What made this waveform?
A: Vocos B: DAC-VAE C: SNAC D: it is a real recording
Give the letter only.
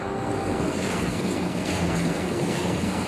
C